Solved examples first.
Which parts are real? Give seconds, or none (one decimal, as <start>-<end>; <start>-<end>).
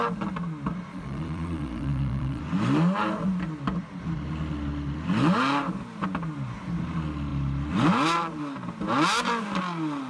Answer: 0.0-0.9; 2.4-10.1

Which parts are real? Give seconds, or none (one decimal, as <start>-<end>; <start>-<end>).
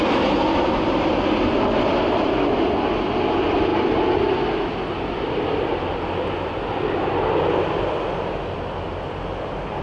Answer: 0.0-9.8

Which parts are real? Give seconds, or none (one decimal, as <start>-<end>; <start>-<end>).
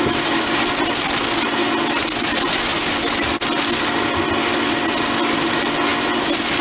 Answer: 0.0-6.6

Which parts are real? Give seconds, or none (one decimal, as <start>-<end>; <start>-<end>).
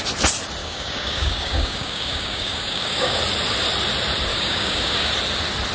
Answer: 0.0-0.6; 3.2-4.3; 5.1-5.7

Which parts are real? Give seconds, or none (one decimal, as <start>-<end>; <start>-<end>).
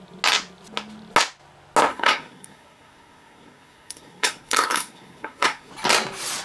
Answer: 0.0-1.9; 5.7-6.4